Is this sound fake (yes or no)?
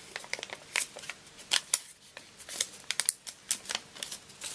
no